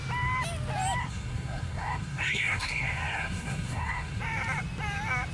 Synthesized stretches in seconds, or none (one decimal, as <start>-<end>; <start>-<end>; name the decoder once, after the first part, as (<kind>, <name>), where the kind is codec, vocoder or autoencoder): 1.0-4.2 (codec, SNAC)